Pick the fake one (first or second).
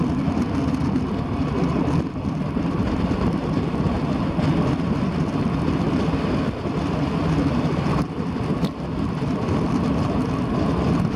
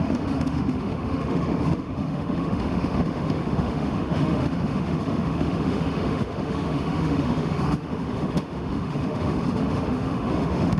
second